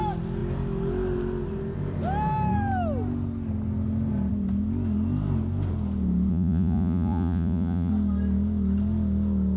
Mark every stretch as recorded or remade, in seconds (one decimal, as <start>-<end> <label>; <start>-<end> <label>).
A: 0.0-6.3 recorded; 6.3-7.9 remade; 7.9-9.6 recorded